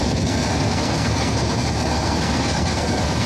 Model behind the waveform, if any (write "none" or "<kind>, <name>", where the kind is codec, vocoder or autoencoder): codec, SNAC